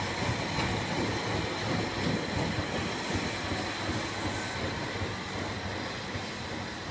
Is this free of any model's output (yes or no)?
yes